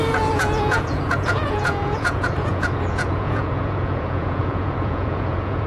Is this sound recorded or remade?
remade